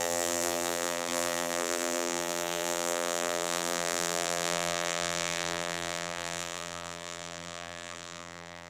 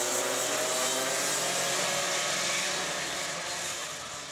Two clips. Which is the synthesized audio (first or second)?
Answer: first